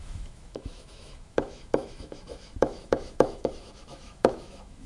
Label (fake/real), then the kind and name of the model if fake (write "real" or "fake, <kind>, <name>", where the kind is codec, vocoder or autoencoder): fake, autoencoder, DAC-VAE